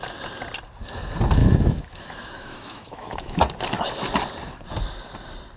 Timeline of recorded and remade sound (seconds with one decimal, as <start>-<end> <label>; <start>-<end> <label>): 0.0-1.4 recorded; 1.4-3.4 remade; 3.4-5.6 recorded